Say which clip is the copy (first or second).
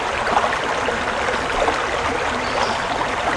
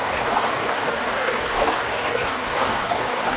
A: second